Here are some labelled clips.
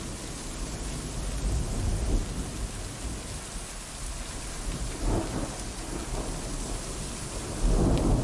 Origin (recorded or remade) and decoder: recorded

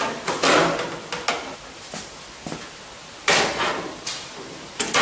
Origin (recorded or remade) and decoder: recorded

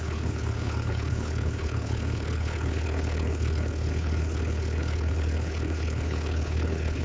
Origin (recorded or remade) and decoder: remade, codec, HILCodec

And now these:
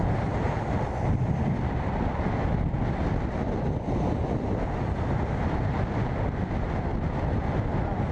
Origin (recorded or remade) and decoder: recorded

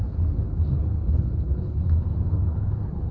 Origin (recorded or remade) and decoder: remade, codec, HILCodec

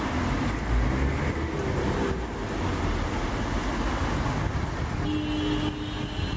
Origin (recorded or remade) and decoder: recorded